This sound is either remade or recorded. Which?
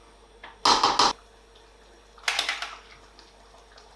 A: recorded